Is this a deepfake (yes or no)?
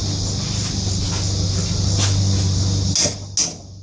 no